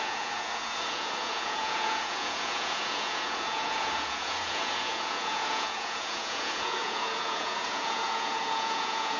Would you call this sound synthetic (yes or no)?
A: yes